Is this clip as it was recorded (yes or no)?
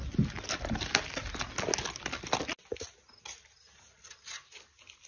yes